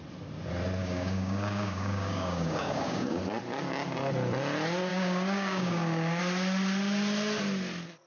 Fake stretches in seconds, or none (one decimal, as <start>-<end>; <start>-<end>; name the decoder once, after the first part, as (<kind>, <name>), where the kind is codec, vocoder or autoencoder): 0.8-3.2 (codec, DAC); 4.9-6.2